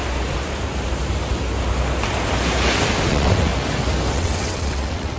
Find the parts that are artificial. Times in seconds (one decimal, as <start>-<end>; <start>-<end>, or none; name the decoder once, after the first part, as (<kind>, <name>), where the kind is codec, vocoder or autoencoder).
3.1-3.5 (vocoder, WaveNeXt); 4.1-5.2